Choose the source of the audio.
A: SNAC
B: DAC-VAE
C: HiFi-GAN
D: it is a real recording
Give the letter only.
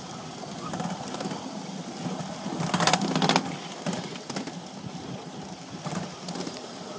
D